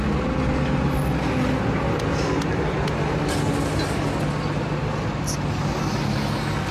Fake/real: real